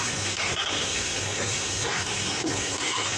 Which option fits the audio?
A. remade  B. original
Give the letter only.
A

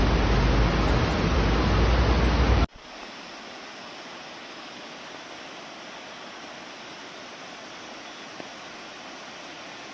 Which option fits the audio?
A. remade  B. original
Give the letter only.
B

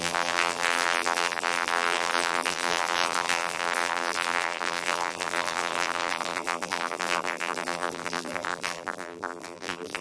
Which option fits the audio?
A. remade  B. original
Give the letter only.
A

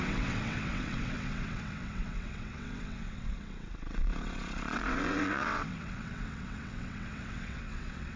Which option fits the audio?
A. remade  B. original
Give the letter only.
A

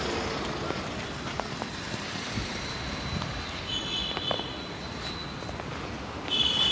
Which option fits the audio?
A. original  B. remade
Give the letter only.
A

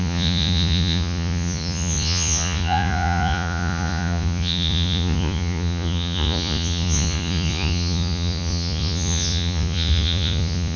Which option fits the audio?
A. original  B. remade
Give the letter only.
B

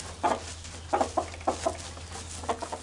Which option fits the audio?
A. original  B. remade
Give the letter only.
A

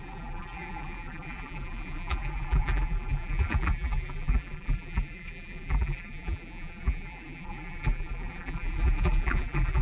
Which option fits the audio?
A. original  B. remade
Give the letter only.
B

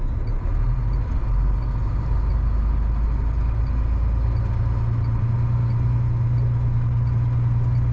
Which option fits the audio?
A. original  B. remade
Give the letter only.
A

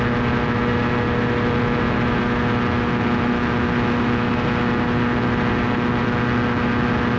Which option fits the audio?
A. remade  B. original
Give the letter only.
B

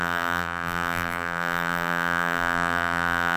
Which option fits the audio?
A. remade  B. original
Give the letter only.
A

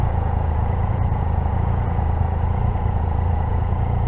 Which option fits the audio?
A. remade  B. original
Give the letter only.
A